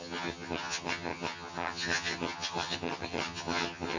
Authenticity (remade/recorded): remade